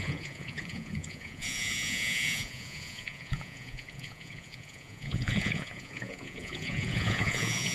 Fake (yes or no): yes